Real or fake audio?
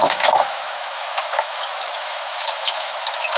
fake